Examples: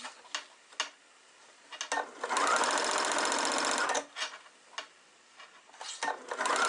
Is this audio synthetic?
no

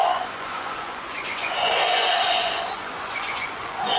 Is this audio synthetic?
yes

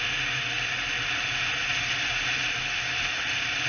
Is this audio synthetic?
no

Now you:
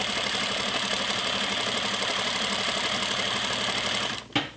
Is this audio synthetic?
no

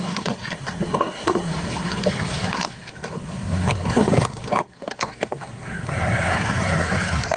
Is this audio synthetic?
yes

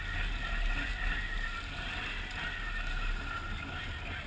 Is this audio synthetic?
no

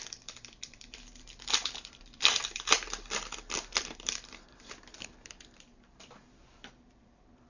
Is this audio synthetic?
yes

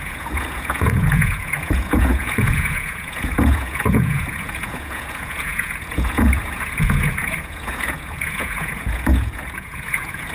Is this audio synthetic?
yes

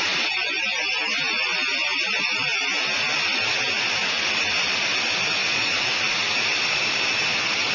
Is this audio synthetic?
no